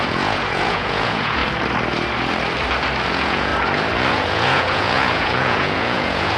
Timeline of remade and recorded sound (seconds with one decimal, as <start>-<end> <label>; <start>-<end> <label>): 0.0-1.4 remade; 1.4-3.1 recorded; 3.1-3.5 remade; 3.5-4.1 recorded; 4.1-6.4 remade